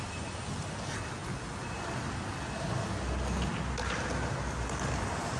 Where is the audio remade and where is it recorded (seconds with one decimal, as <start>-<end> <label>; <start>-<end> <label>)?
0.0-5.4 recorded